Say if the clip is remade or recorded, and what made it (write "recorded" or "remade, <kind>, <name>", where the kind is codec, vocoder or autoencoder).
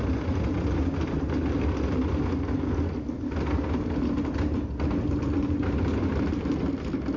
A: recorded